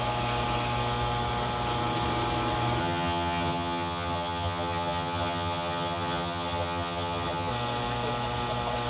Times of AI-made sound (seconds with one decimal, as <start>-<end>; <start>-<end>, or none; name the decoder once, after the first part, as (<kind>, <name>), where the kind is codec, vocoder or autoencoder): 2.8-7.5 (vocoder, HiFi-GAN)

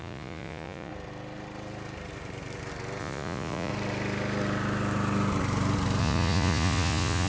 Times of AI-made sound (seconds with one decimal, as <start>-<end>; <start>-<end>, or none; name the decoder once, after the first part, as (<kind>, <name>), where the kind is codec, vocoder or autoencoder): 0.0-0.9 (vocoder, Vocos); 3.0-3.7; 6.0-7.3

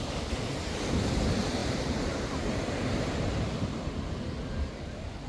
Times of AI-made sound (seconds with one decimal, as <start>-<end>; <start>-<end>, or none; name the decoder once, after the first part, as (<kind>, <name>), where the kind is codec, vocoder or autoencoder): 1.6-3.8 (vocoder, BigVGAN v2)

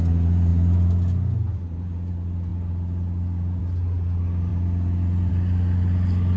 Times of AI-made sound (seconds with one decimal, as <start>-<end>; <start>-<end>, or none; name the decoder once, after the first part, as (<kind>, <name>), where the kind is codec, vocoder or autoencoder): none

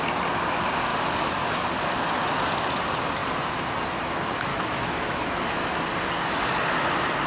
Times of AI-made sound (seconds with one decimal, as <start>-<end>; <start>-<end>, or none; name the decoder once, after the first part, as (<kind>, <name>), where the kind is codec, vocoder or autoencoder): 4.5-5.8 (autoencoder, DAC-VAE)

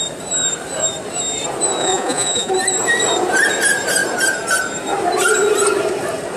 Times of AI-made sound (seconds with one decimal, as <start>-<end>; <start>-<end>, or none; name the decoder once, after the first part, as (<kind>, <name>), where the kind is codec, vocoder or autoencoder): 1.8-2.5 (vocoder, Vocos)